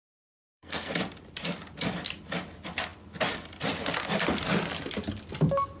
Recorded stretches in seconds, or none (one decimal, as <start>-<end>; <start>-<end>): 0.9-5.8